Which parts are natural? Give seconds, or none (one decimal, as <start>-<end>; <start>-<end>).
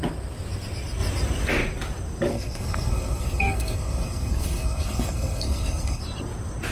0.0-2.3; 6.0-6.7